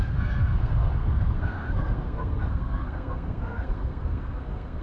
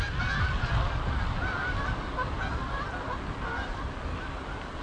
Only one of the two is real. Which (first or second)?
second